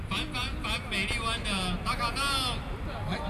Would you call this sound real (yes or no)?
yes